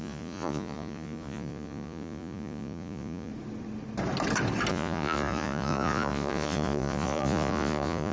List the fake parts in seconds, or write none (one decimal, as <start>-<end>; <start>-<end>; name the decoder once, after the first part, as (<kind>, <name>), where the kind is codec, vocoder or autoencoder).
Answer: 0.0-3.3 (vocoder, Vocos); 4.7-8.1